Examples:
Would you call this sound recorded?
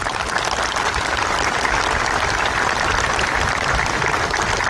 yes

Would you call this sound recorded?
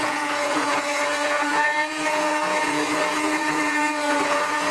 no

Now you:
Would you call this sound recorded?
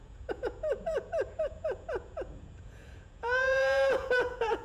no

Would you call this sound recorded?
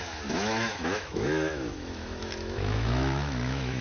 no